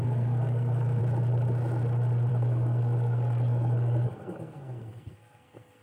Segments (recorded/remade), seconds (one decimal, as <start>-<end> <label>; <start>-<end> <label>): 0.0-1.0 remade; 1.0-2.3 recorded; 2.3-5.8 remade